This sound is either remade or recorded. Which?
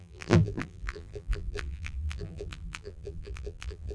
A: remade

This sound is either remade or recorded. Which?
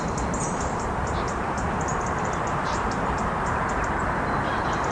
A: remade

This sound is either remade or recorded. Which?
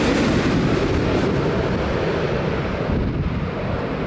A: recorded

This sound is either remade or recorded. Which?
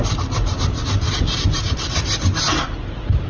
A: remade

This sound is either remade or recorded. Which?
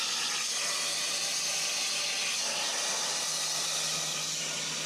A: recorded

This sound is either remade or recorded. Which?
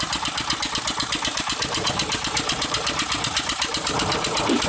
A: remade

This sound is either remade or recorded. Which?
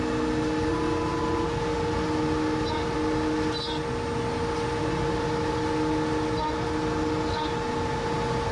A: recorded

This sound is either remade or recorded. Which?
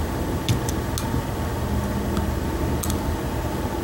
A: recorded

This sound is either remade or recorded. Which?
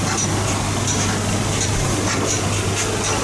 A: recorded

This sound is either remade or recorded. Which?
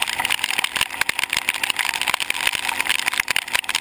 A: recorded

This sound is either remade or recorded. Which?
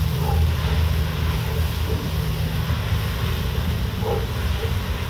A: recorded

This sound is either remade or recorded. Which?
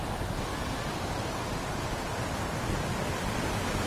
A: recorded